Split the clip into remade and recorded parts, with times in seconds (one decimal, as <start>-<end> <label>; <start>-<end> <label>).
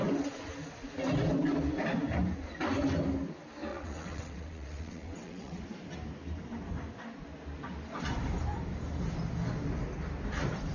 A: 0.0-3.7 recorded; 3.7-5.6 remade; 5.6-10.7 recorded